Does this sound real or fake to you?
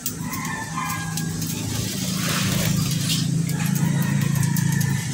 real